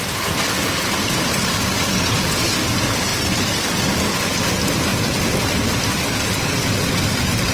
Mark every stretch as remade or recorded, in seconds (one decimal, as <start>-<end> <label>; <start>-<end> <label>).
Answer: 0.0-4.9 recorded; 4.9-5.8 remade; 5.8-7.5 recorded